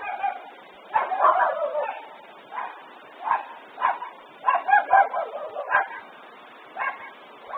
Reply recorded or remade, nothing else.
remade